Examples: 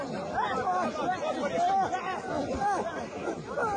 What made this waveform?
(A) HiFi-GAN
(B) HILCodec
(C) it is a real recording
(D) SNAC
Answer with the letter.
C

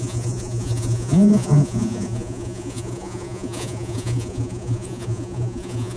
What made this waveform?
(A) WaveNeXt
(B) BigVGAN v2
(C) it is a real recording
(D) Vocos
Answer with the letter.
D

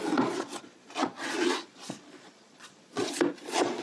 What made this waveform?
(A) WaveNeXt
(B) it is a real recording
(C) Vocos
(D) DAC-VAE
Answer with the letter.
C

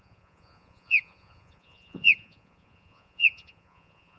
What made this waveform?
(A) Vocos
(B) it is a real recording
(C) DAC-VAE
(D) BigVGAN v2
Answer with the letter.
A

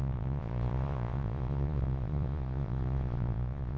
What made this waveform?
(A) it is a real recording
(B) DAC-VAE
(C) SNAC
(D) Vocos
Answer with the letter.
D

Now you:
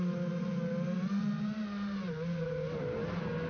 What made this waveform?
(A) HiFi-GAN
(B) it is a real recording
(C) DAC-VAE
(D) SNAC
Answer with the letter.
B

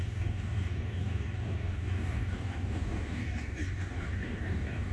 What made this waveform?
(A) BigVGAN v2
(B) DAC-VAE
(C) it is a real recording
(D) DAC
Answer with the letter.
D